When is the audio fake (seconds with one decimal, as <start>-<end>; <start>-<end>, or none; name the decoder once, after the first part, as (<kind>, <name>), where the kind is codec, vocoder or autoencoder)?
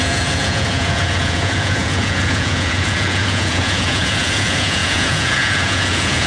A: 0.0-6.3 (vocoder, Vocos)